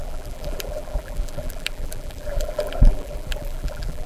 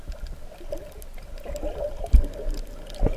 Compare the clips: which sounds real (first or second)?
second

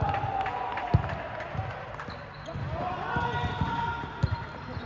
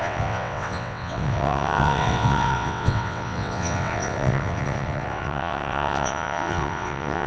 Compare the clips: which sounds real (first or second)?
first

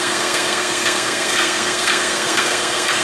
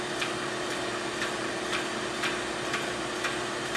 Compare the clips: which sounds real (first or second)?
second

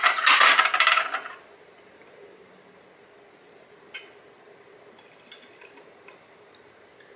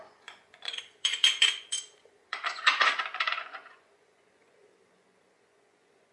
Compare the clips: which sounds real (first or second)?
first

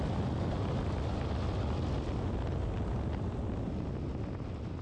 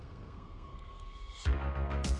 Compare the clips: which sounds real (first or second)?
first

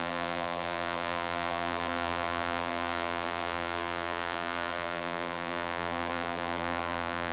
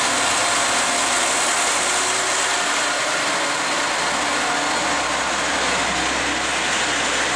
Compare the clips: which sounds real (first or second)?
second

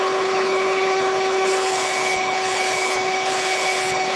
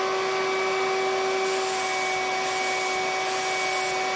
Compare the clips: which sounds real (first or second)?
second